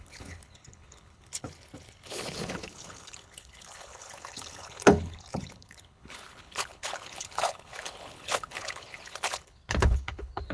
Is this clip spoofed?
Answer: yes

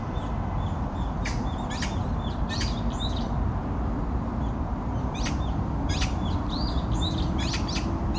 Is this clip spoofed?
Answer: no